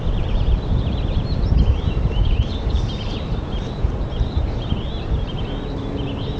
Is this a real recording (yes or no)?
no